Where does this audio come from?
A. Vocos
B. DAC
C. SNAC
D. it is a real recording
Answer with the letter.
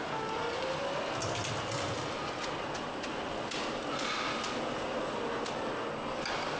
D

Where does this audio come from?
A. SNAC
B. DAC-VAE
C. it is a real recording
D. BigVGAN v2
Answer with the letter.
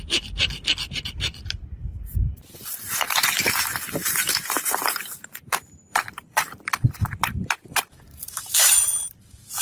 D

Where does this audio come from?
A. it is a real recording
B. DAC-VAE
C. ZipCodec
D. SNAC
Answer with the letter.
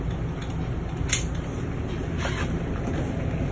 A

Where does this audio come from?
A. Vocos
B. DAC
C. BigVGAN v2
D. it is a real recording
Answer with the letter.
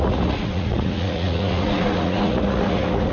A